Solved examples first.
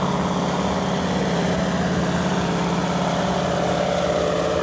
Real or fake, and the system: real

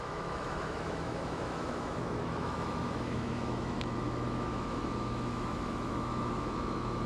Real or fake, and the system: fake, autoencoder, DAC-VAE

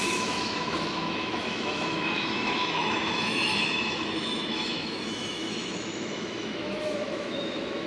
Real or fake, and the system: fake, autoencoder, DAC-VAE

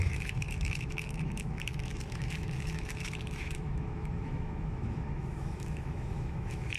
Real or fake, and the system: fake, autoencoder, DAC-VAE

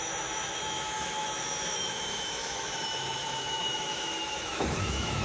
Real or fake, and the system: fake, autoencoder, DAC-VAE